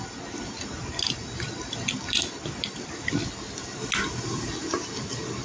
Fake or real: real